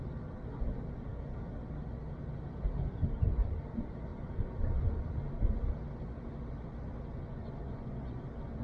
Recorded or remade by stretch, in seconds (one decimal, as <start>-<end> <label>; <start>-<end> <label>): 0.0-7.3 recorded; 7.3-8.2 remade; 8.2-8.6 recorded